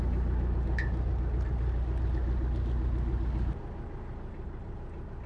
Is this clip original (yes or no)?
yes